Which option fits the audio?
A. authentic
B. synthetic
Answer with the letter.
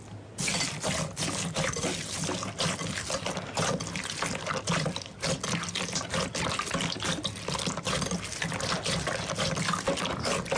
A